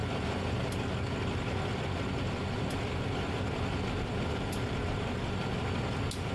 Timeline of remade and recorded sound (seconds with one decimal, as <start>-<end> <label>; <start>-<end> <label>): 0.0-6.3 recorded